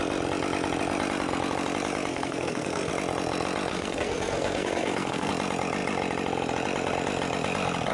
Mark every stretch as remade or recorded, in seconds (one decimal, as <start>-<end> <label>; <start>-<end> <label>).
0.0-2.1 recorded; 2.1-2.9 remade; 2.9-3.7 recorded; 3.7-5.3 remade; 5.3-7.9 recorded